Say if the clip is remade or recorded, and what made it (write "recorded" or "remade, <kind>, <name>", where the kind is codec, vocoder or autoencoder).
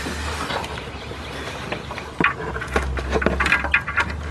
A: recorded